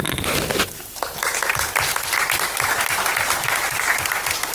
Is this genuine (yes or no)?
yes